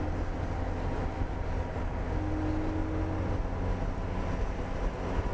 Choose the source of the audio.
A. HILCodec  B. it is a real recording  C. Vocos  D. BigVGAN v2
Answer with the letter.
B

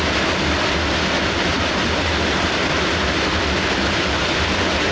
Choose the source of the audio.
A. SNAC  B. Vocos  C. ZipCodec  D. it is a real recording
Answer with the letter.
D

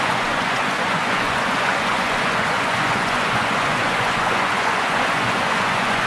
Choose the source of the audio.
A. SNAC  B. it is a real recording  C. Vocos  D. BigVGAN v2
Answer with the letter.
C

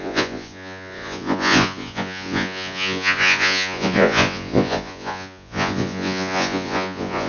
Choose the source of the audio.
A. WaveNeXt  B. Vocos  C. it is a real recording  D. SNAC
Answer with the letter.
B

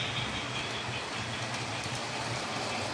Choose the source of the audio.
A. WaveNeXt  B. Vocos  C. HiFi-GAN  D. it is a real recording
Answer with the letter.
D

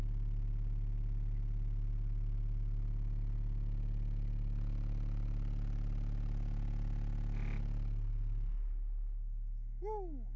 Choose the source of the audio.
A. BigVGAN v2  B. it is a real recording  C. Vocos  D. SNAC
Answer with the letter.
B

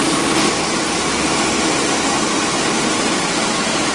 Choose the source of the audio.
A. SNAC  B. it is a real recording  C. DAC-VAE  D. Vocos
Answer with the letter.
B